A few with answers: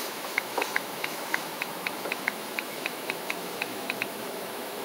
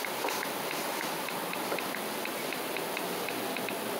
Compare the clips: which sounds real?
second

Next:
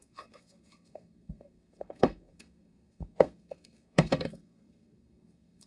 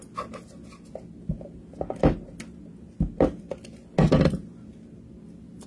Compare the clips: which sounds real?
second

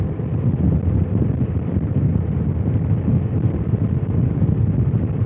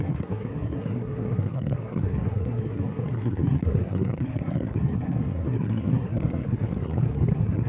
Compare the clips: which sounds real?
first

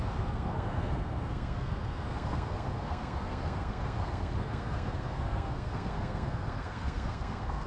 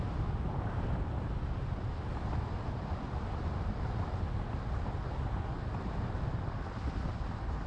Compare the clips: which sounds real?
second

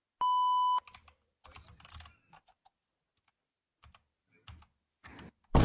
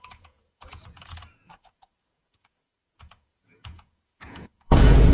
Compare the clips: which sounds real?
first